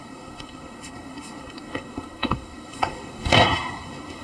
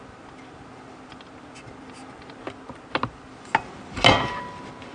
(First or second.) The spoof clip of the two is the first